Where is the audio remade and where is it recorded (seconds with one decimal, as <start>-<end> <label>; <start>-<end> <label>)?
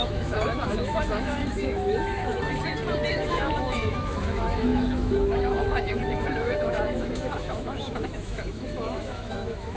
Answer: 0.0-2.5 remade; 2.5-3.1 recorded; 3.1-9.8 remade